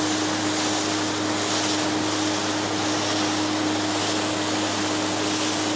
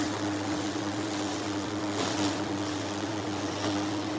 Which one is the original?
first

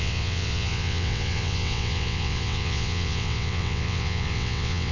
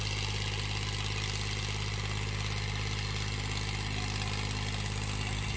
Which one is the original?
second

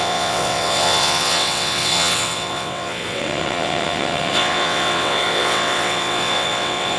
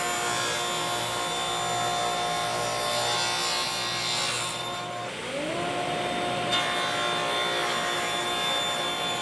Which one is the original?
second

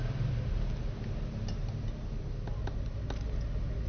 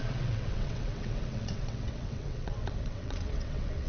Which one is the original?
first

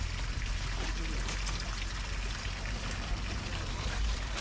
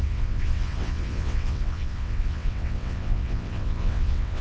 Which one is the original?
first